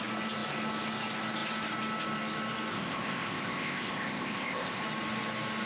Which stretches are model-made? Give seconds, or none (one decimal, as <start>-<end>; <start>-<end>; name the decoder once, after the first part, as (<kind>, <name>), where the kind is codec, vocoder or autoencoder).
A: 2.7-4.8 (codec, ZipCodec)